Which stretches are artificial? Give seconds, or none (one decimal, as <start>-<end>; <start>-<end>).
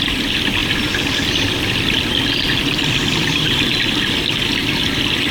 0.6-3.8